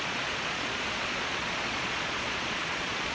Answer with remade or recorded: remade